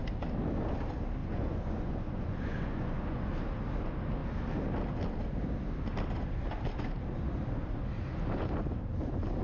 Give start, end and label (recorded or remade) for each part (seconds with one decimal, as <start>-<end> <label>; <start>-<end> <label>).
0.0-1.2 recorded; 1.2-3.3 remade; 3.3-9.4 recorded